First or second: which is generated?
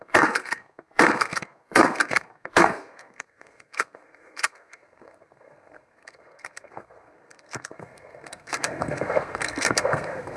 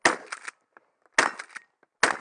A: first